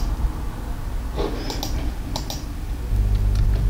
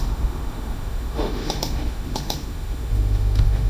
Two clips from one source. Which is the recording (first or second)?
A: first